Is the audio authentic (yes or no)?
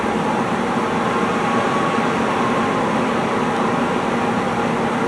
yes